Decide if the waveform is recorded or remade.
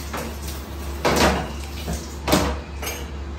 recorded